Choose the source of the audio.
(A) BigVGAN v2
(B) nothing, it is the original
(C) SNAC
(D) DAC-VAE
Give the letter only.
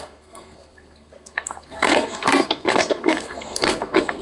C